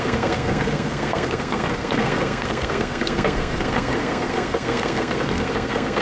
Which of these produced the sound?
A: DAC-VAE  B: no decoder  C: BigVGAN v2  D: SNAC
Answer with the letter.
D